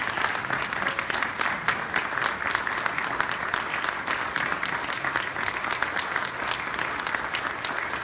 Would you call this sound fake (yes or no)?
no